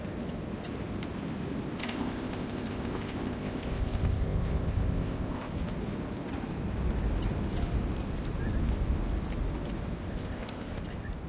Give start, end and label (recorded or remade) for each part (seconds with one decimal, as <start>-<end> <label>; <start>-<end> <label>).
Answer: 0.0-1.8 recorded; 1.8-5.5 remade; 5.5-10.1 recorded; 10.1-10.8 remade; 10.8-11.3 recorded